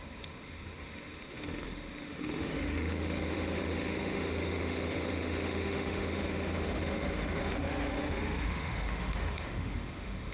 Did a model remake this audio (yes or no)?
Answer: yes